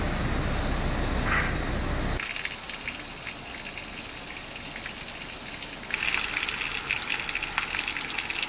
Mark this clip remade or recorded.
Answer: recorded